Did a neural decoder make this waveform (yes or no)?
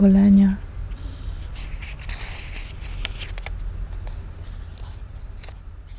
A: no